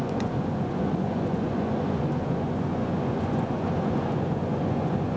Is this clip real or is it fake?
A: fake